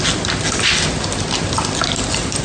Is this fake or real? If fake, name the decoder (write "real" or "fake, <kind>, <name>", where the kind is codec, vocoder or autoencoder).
real